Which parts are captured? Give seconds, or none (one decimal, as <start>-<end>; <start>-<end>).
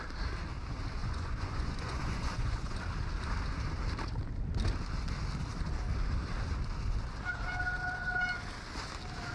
0.0-1.0; 2.8-9.3